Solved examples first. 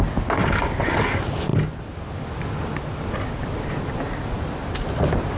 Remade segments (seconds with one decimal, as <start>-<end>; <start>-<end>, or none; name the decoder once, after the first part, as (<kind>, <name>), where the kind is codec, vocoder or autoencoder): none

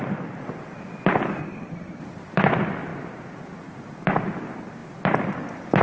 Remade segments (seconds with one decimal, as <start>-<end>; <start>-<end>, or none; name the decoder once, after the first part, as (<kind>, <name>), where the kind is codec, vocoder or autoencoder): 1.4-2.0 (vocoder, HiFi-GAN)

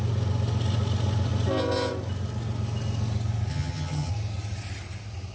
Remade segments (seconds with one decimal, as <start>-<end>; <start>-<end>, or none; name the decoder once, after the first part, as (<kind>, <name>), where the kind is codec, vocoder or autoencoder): 3.5-4.1 (vocoder, HiFi-GAN)